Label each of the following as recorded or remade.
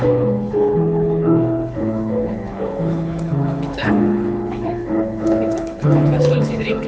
remade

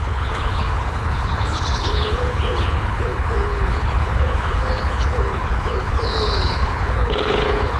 remade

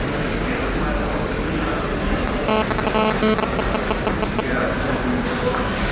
recorded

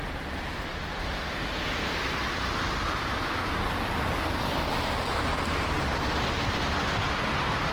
recorded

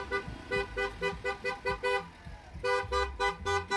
recorded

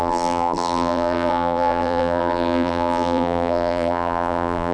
remade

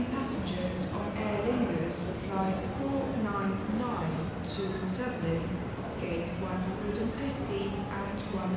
recorded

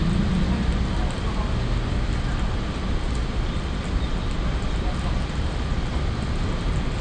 recorded